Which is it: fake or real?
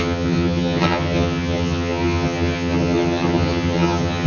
fake